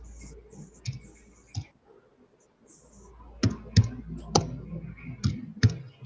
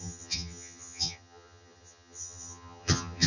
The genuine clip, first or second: first